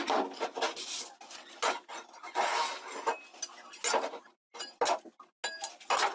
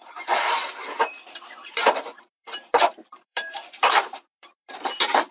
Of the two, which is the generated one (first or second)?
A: second